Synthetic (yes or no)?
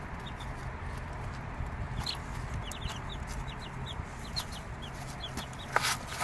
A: no